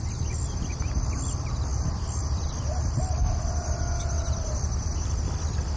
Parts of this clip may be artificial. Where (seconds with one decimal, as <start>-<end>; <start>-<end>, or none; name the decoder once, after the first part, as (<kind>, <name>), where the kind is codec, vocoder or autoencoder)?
none